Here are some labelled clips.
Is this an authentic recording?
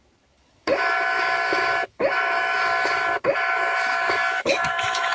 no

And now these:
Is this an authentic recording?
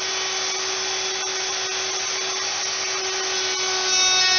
yes